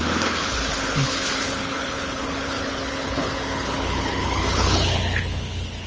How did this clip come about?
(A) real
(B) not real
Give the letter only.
B